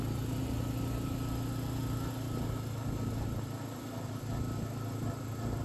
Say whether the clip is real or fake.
real